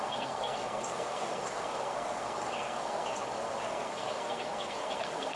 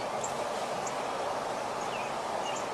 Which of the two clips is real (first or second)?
second